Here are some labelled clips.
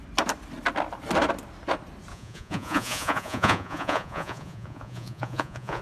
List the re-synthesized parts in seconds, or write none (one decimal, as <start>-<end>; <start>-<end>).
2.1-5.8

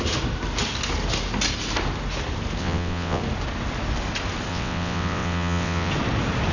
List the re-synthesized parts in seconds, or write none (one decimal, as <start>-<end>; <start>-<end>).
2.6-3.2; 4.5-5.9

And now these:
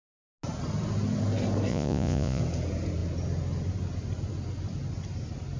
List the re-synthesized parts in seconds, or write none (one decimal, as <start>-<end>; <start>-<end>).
1.7-2.4

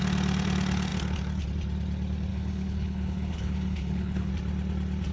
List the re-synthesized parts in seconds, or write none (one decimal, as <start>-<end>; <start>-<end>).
2.3-4.3

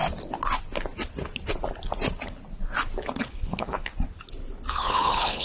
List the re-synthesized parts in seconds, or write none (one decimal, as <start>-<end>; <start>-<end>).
3.2-3.9; 4.7-5.4